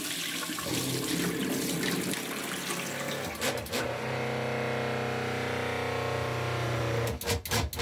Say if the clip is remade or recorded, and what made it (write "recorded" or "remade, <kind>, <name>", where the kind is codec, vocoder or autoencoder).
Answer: recorded